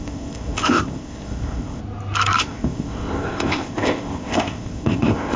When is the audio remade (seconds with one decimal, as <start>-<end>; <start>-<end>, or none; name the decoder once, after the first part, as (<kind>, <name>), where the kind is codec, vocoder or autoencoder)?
0.0-1.8 (codec, ZipCodec); 2.4-5.4